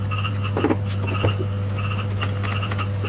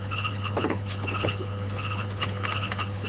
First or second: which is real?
first